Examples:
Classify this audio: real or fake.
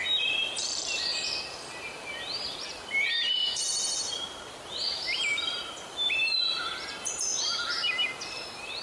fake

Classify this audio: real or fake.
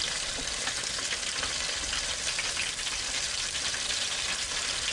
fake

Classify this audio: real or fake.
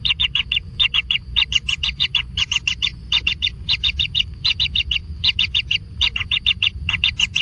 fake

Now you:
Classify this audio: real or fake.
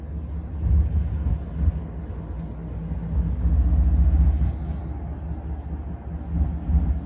real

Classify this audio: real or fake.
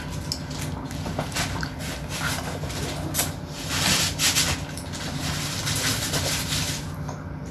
real